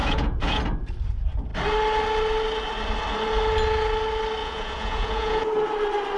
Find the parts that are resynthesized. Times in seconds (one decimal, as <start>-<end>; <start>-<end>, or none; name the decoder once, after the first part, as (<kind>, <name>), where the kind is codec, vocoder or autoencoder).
0.0-0.6 (vocoder, Vocos); 4.4-5.5